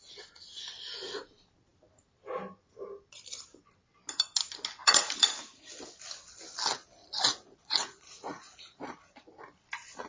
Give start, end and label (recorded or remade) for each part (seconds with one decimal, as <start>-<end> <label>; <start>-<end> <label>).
0.0-4.8 recorded; 4.8-5.7 remade; 5.7-7.0 recorded; 7.0-9.3 remade; 9.3-10.1 recorded